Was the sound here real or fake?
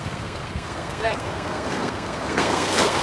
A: fake